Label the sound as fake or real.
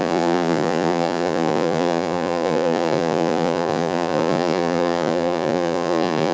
fake